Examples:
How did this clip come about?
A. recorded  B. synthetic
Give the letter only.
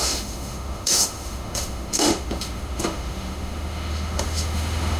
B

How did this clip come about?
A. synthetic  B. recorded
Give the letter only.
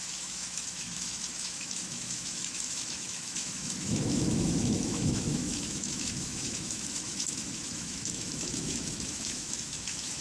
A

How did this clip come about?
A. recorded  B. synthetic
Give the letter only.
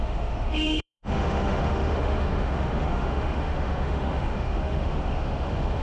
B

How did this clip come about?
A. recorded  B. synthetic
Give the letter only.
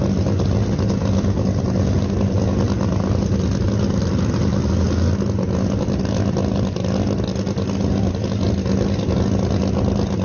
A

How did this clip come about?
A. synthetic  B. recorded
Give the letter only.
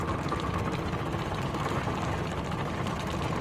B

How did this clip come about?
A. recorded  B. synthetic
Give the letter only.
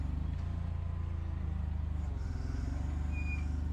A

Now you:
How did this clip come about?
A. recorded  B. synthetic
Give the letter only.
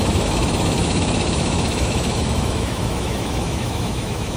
B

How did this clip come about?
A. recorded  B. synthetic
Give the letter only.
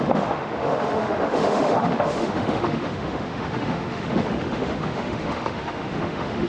B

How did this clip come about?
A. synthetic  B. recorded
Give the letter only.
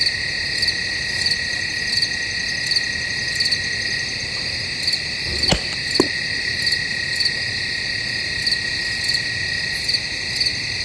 B